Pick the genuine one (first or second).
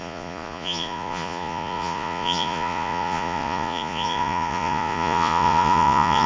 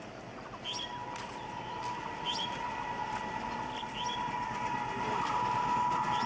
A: second